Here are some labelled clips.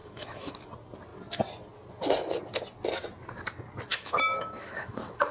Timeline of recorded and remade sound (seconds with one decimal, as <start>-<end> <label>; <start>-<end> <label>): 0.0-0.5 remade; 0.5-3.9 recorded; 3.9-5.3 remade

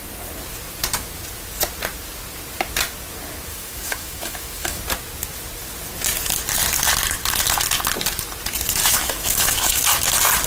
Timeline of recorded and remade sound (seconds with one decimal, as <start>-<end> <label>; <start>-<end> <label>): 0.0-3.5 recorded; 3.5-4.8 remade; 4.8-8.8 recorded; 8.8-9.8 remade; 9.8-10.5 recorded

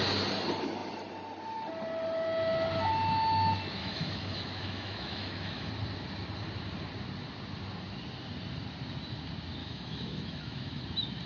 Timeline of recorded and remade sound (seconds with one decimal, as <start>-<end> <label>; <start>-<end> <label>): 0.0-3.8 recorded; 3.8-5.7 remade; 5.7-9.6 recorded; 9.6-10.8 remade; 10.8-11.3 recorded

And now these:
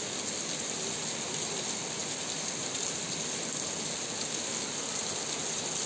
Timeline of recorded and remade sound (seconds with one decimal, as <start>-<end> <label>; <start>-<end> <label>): 0.0-5.9 recorded

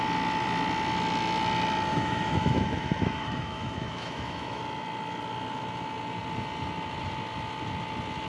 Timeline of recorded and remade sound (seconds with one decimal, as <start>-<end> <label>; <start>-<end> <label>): 0.0-1.9 recorded; 1.9-4.6 remade; 4.6-8.3 recorded

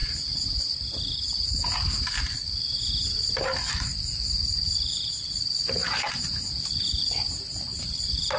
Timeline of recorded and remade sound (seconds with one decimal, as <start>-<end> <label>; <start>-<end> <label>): 0.0-8.4 recorded

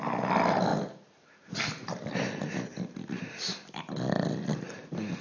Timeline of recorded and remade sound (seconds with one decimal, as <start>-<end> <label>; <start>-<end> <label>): 0.0-5.2 recorded